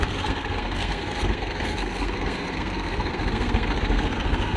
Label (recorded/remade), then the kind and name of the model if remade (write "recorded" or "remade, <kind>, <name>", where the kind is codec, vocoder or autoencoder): remade, codec, SNAC